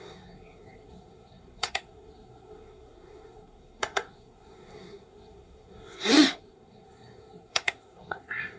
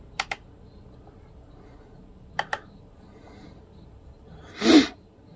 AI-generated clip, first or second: first